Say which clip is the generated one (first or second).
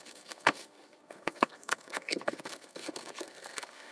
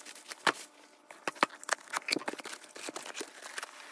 first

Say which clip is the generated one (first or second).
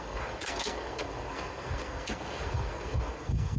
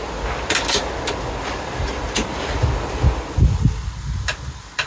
first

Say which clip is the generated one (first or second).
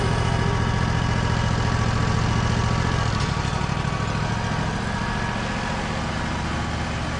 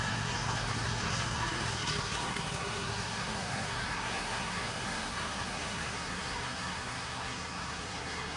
second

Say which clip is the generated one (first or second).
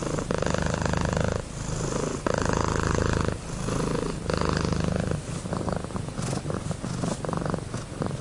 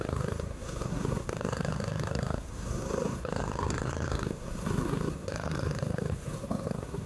second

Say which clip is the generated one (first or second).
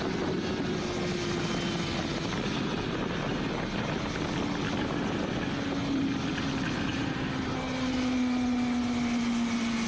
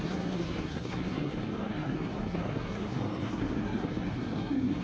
second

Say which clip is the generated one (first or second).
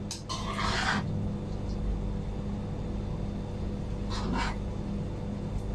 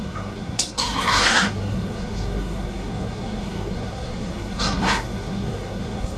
second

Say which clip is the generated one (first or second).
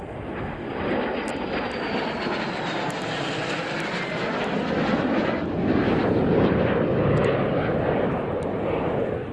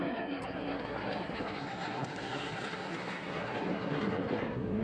second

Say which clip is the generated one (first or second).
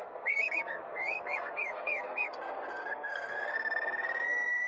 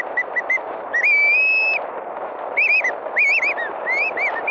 first